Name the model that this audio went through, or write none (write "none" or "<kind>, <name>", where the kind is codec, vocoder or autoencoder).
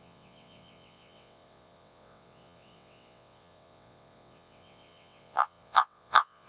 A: vocoder, WaveNeXt